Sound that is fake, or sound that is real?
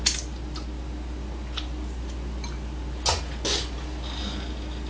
real